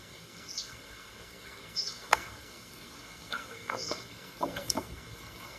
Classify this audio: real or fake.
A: fake